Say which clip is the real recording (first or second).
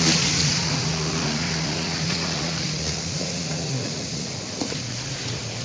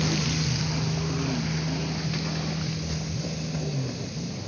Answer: second